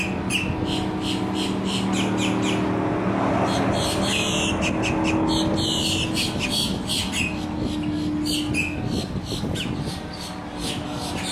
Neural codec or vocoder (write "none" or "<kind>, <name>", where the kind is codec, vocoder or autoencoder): none